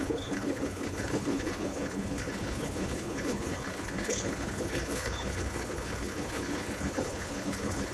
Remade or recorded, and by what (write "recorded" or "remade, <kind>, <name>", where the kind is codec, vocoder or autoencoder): remade, codec, HILCodec